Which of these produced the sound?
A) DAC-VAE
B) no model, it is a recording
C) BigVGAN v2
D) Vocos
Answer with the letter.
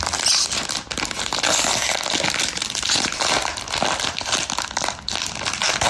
B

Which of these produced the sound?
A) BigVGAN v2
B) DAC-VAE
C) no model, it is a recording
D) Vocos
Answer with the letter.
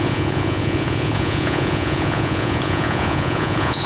D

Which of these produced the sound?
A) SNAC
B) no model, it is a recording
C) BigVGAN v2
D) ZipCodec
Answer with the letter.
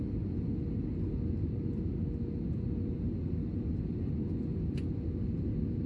B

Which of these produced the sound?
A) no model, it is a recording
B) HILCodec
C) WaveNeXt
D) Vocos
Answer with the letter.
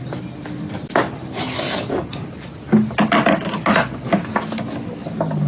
A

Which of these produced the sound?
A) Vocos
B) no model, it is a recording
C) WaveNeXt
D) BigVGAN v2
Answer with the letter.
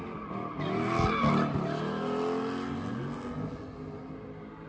B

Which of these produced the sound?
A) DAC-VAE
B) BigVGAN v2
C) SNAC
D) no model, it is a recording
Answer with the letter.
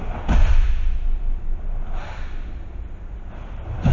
D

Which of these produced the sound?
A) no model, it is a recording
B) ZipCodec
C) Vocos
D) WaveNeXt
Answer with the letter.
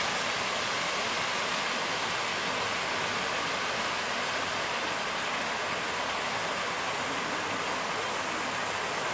A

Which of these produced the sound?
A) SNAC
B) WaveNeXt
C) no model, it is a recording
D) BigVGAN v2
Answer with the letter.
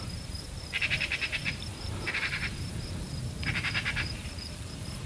D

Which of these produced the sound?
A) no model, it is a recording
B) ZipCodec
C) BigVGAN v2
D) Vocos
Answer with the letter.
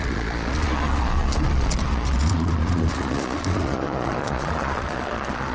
D